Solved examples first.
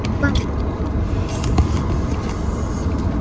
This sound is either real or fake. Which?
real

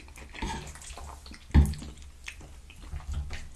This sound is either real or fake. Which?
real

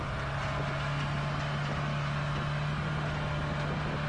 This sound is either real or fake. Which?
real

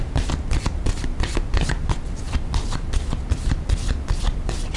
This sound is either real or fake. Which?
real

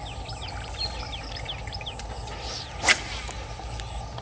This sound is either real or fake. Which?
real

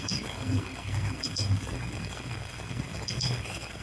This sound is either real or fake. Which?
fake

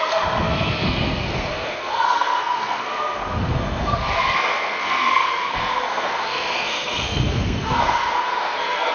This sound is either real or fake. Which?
fake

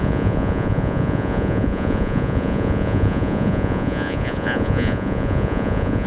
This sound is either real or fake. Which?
fake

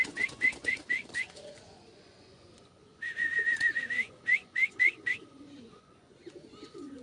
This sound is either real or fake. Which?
fake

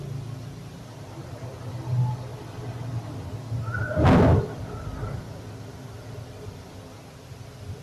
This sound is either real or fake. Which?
real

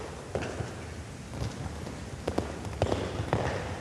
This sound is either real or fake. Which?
real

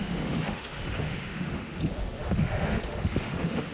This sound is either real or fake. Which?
fake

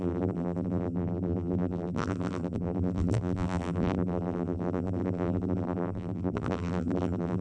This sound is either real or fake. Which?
fake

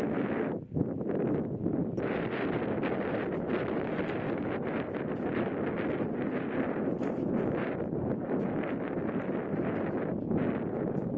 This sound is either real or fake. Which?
real